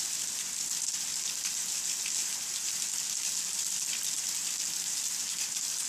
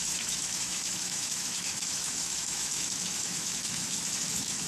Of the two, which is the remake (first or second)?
second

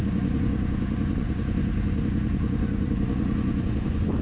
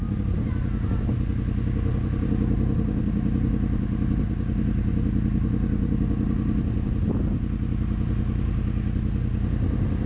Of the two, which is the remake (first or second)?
first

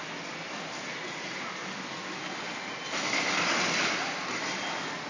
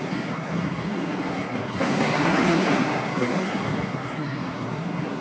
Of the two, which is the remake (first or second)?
second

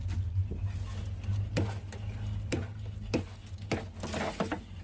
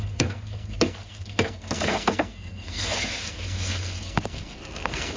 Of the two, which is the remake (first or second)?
second